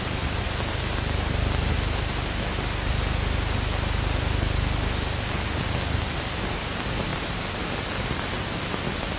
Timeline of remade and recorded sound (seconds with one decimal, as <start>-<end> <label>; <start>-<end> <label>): 0.0-7.1 recorded; 7.1-7.7 remade; 7.7-9.2 recorded